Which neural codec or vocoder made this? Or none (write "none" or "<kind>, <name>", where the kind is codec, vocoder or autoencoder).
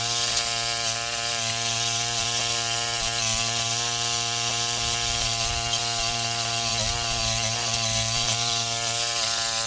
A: vocoder, BigVGAN v2